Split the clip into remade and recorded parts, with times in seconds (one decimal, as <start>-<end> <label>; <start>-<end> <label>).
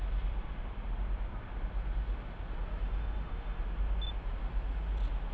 0.0-3.0 recorded; 3.0-3.6 remade; 3.6-5.3 recorded